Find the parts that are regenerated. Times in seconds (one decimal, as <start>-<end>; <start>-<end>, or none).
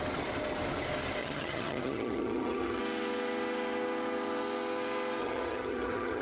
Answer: 1.2-2.8; 5.2-6.2